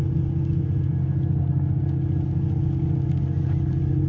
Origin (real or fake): real